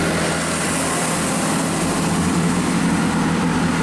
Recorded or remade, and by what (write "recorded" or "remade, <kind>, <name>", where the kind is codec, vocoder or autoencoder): recorded